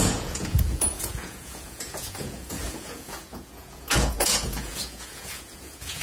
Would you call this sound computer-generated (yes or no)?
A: yes